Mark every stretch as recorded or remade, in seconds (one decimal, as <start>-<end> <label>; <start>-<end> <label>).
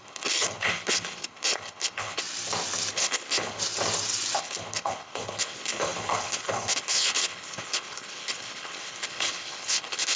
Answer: 0.0-2.2 remade; 2.2-2.9 recorded; 2.9-3.6 remade; 3.6-4.4 recorded; 4.4-10.2 remade